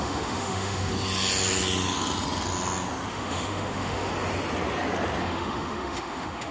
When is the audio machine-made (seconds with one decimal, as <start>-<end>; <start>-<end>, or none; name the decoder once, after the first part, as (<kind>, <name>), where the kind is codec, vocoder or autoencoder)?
0.0-0.9 (autoencoder, DAC-VAE); 3.1-4.1; 5.2-6.5